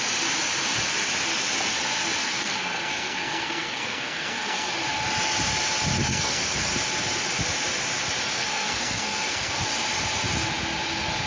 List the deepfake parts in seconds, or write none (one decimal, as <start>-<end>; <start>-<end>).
2.2-4.7; 6.0-6.7; 8.4-9.6